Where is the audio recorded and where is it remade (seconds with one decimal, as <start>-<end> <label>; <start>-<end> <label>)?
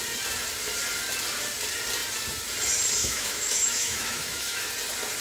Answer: 0.0-3.0 recorded; 3.0-4.7 remade; 4.7-5.2 recorded